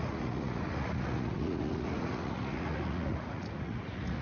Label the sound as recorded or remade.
remade